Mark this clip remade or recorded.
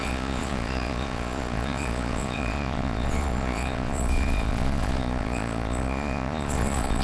remade